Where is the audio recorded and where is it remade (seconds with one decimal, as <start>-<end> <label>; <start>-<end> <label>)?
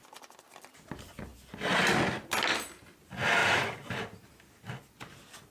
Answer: 0.0-3.4 recorded; 3.4-4.3 remade; 4.3-5.5 recorded